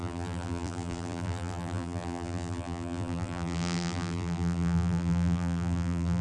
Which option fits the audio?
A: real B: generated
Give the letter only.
B